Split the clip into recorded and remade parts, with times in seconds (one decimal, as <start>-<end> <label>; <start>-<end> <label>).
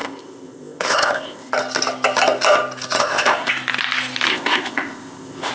0.0-1.5 remade; 1.5-3.0 recorded; 3.0-3.5 remade; 3.5-4.3 recorded; 4.3-5.5 remade